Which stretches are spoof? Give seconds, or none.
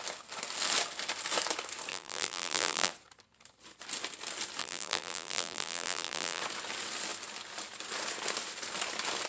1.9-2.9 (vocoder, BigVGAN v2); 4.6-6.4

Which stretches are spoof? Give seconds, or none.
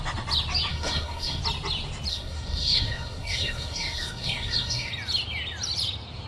0.7-1.4 (codec, SNAC); 2.1-4.9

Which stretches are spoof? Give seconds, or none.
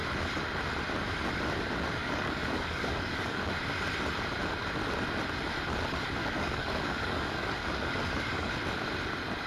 2.0-3.4 (codec, DAC); 6.2-8.5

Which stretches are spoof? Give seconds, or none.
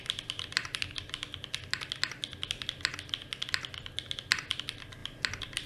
none